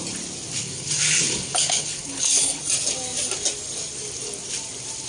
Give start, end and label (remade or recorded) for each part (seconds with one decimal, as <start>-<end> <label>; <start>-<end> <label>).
0.0-0.6 recorded; 0.6-2.6 remade; 2.6-5.1 recorded